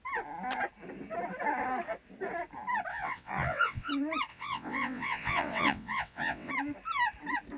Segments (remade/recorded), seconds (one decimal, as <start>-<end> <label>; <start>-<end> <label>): 0.0-2.9 recorded; 2.9-3.9 remade; 3.9-4.3 recorded; 4.3-6.5 remade; 6.5-7.6 recorded